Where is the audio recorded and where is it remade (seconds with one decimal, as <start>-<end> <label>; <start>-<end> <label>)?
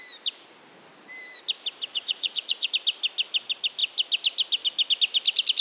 0.0-1.9 recorded; 1.9-2.7 remade; 2.7-5.6 recorded